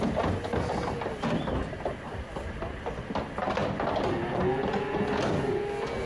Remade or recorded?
recorded